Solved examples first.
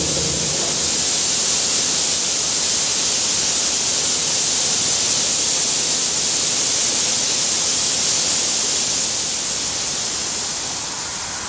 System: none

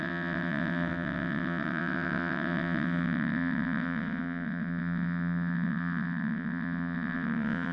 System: vocoder, WaveNeXt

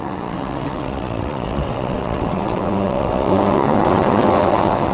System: vocoder, WaveNeXt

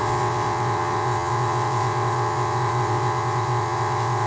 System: vocoder, WaveNeXt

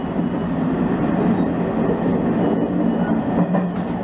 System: none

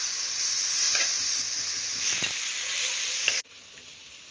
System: none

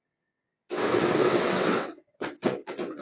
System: vocoder, WaveNeXt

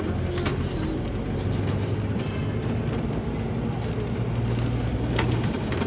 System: none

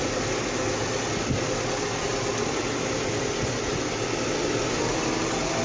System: none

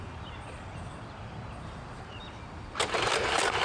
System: none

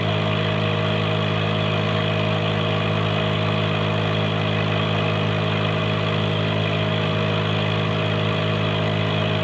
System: none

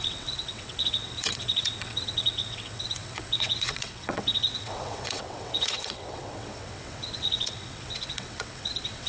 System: vocoder, WaveNeXt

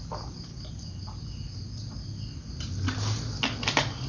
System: none